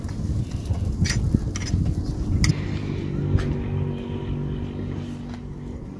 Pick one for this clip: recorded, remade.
recorded